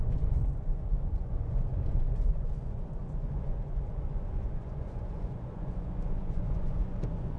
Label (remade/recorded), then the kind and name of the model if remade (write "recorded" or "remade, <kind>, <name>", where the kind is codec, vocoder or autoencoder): remade, vocoder, Vocos